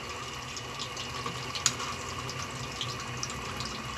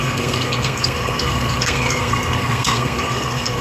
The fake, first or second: second